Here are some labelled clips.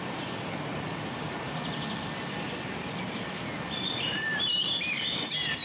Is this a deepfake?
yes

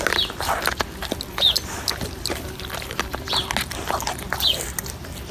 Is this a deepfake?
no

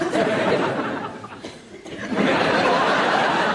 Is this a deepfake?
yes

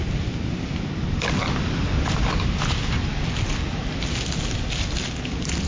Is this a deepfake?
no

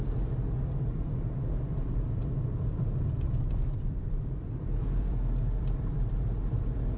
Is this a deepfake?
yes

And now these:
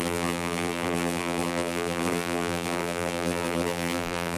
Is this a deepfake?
yes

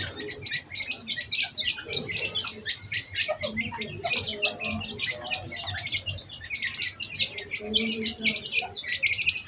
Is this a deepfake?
no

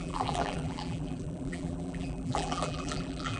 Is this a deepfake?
yes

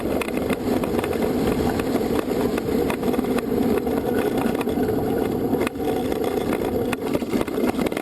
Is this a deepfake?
no